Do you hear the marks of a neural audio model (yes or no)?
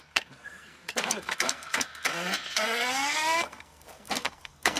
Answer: yes